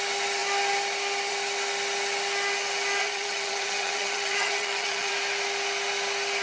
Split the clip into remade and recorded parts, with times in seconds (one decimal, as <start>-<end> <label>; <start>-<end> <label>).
0.0-3.0 recorded; 3.0-5.1 remade; 5.1-6.4 recorded